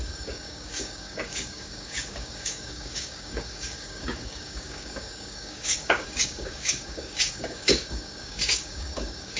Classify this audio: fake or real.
fake